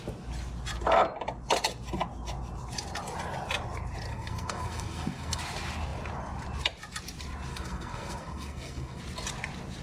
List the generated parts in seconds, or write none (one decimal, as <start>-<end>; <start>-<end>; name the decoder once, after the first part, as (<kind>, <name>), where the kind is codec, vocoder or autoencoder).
4.1-5.4 (codec, SNAC); 7.5-9.0

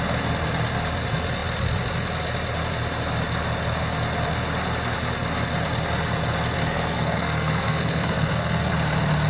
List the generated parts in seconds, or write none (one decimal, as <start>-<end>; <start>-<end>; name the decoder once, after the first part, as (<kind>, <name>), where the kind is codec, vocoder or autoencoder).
6.6-8.7 (codec, SNAC)

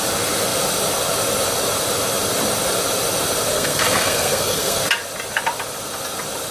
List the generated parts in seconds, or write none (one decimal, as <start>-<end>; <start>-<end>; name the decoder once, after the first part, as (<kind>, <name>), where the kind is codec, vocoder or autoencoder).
3.5-4.8 (codec, SNAC)

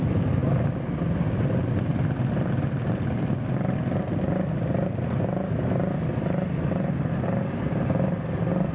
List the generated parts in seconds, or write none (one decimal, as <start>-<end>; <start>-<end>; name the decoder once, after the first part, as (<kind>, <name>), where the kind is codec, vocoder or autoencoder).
none

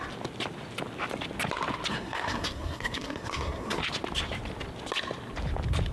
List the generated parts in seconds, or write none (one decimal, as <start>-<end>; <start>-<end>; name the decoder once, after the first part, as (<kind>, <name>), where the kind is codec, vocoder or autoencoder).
1.9-3.8 (codec, SNAC)

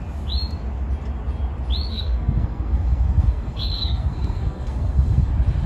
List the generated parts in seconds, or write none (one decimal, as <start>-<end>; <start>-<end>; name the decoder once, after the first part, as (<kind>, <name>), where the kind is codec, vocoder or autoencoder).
1.9-5.3 (codec, SNAC)

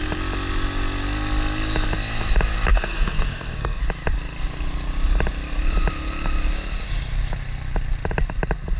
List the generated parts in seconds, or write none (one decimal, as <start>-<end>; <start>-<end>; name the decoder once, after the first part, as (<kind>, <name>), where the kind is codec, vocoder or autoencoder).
2.7-3.8 (codec, SNAC)